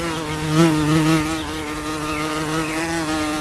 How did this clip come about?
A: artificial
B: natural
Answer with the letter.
B